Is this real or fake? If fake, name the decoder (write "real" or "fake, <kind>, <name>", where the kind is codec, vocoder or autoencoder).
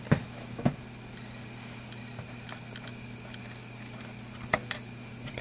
real